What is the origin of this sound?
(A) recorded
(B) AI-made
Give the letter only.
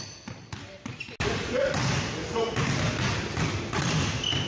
A